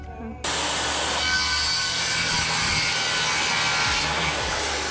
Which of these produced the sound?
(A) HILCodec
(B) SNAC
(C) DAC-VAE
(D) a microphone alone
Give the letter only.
D